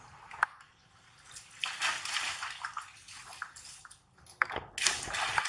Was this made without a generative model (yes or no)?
yes